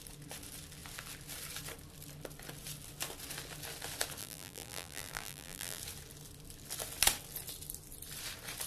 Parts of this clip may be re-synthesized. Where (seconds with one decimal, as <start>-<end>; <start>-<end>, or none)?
4.2-5.8